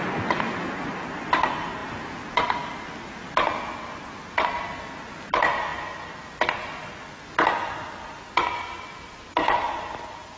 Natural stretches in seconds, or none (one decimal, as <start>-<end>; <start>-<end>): 0.0-10.4